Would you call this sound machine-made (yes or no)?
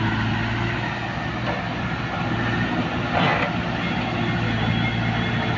no